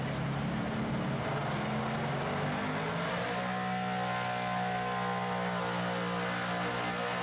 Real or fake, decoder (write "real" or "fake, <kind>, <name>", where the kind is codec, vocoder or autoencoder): real